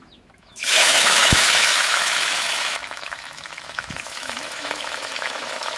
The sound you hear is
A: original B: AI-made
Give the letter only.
B